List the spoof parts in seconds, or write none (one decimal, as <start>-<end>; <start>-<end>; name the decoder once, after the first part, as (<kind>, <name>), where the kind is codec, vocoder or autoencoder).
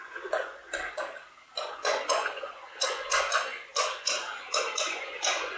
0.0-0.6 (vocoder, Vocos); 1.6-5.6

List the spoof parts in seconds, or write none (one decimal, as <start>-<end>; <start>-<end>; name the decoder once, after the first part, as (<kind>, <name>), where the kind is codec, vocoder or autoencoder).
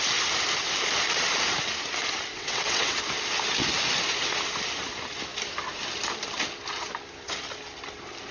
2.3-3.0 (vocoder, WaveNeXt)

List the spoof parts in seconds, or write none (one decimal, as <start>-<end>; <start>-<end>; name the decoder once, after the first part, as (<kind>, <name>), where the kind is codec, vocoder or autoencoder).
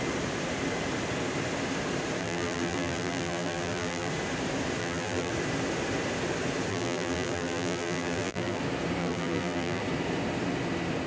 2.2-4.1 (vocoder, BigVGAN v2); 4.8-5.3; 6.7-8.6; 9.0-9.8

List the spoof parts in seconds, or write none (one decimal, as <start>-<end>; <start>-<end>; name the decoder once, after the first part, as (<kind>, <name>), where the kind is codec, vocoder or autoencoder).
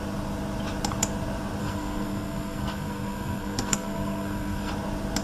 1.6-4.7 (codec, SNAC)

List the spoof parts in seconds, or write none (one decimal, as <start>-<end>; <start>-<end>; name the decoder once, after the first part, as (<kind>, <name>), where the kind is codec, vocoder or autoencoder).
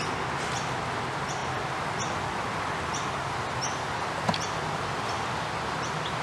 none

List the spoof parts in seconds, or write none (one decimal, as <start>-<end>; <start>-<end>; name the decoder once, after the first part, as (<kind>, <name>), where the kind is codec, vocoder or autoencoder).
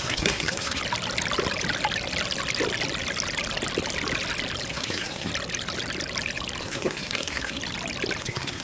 0.0-0.8 (codec, SNAC); 4.7-5.3; 6.6-7.6; 8.2-8.6